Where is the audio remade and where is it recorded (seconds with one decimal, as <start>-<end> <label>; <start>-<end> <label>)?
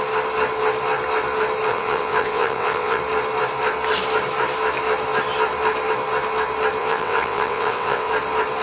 0.0-1.7 recorded; 1.7-3.0 remade; 3.0-6.8 recorded; 6.8-8.1 remade; 8.1-8.6 recorded